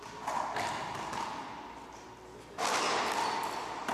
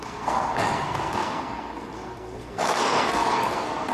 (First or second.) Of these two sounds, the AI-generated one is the second